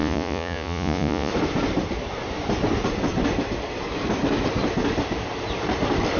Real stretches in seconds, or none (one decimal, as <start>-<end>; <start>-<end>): 1.3-6.2